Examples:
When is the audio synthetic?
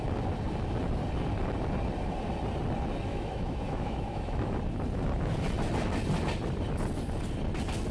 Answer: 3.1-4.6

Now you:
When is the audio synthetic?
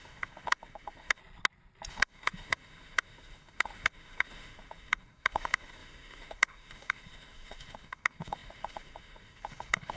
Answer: 0.0-1.2; 1.9-10.0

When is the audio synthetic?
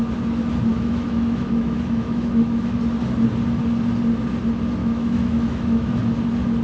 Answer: 0.7-2.8; 4.8-6.0